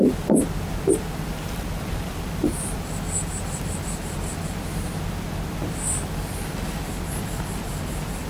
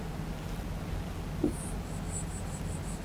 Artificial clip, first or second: first